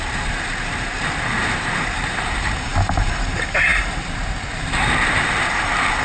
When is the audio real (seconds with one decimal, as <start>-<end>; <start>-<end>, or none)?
none